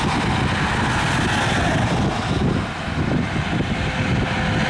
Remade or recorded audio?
recorded